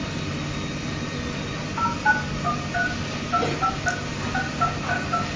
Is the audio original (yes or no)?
yes